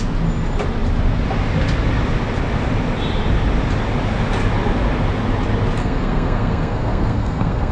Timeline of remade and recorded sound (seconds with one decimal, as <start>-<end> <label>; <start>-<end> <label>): 0.0-5.8 recorded; 5.8-7.7 remade